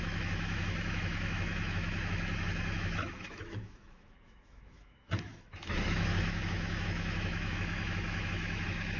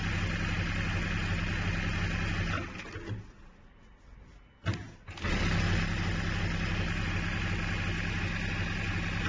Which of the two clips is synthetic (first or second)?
first